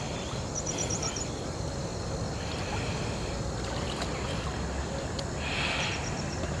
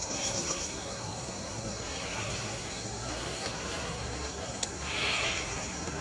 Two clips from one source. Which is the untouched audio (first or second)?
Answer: first